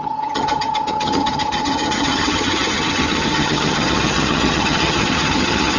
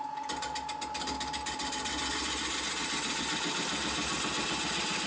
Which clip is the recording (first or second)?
second